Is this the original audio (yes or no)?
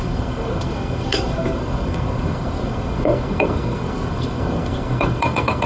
no